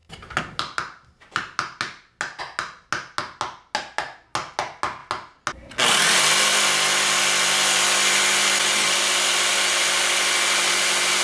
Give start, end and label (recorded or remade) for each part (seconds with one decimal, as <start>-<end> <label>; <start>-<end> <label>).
0.0-11.2 recorded